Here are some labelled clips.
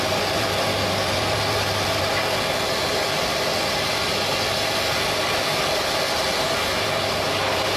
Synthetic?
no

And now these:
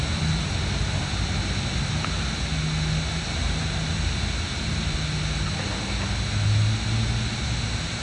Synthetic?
no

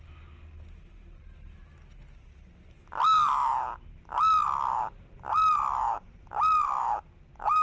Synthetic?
no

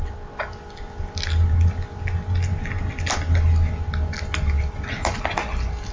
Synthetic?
no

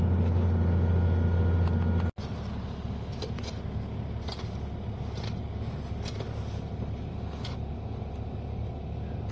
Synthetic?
no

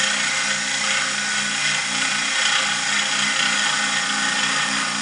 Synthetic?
no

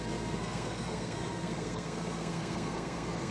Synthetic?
yes